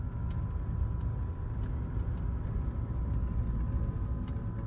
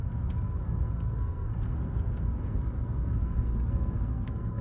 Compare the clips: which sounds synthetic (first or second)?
second